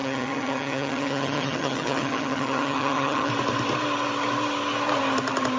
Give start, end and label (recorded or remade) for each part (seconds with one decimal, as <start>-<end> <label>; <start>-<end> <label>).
0.0-3.3 remade; 3.3-5.6 recorded